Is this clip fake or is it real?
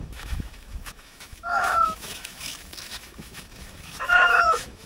fake